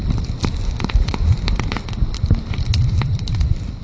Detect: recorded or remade recorded